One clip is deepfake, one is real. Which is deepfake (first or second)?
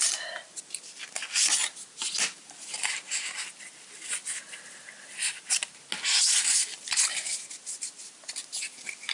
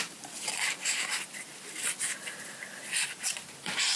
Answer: second